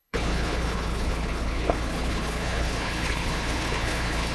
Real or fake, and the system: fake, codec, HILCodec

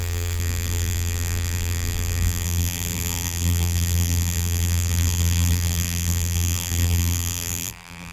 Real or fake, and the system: fake, vocoder, BigVGAN v2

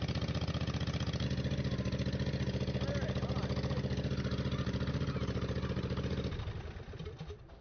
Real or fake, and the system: real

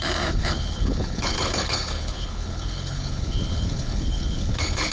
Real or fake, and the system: fake, codec, HILCodec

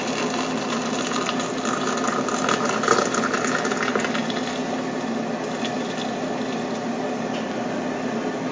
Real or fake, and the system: real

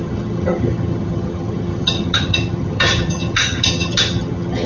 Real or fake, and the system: fake, vocoder, HiFi-GAN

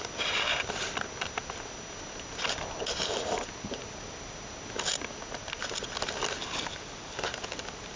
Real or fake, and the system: real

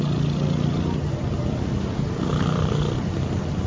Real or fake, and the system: real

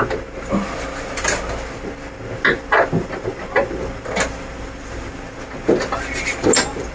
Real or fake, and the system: real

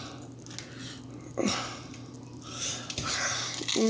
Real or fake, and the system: real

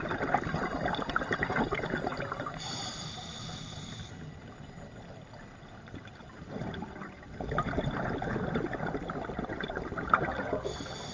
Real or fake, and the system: real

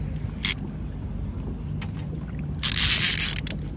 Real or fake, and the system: real